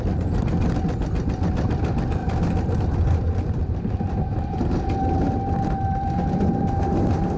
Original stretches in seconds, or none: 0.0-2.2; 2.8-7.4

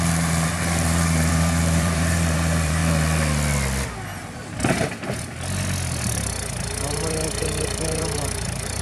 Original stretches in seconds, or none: 2.8-7.4

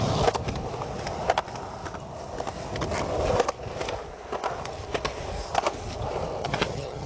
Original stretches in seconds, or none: 0.0-6.4

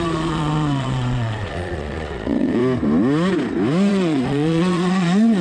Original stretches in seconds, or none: 2.6-3.9

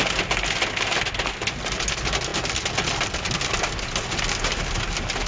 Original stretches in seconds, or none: 0.0-5.3